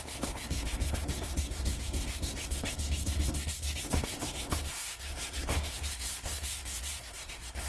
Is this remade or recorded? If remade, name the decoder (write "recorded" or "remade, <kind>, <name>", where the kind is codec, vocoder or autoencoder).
remade, codec, SNAC